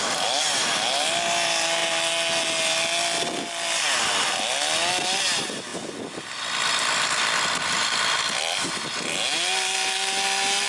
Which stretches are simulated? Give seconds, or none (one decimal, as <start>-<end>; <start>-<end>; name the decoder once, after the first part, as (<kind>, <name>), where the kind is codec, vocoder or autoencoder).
none

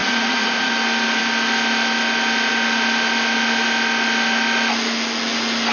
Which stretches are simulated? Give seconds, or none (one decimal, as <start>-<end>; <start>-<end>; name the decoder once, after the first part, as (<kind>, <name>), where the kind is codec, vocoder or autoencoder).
0.0-0.7 (vocoder, Vocos)

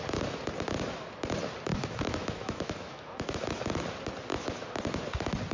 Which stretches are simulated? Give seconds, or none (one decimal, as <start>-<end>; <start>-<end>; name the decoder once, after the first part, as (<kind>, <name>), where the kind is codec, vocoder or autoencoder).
1.7-3.8 (autoencoder, DAC-VAE); 4.3-4.8

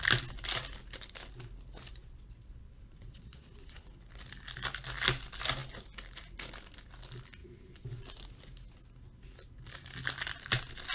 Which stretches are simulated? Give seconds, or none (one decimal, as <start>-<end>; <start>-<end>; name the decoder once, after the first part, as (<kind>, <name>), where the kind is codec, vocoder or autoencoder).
1.9-3.8 (vocoder, Vocos)

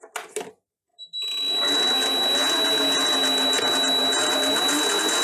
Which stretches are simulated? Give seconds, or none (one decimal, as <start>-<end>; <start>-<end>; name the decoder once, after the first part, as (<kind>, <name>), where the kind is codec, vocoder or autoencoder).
none

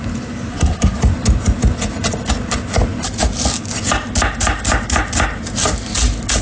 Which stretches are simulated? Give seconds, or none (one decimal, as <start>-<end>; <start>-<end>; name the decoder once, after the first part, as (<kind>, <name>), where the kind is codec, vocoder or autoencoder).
0.5-1.0 (codec, SNAC)

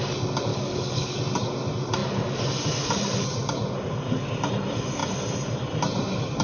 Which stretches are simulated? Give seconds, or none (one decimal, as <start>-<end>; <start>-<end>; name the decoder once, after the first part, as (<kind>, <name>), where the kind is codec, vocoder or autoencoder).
0.5-1.2 (codec, DAC)